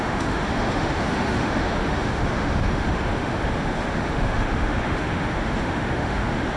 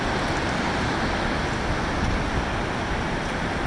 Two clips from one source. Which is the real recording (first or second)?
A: second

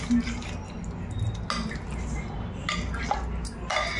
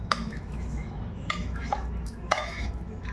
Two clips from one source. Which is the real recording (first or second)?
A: first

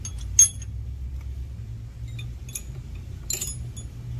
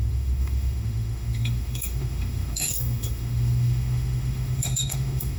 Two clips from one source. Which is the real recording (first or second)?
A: first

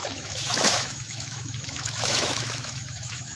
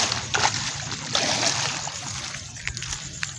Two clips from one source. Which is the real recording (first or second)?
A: second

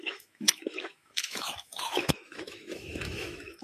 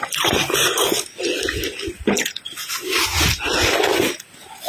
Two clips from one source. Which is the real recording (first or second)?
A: second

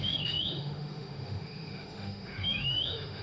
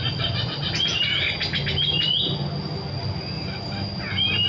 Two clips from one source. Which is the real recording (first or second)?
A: second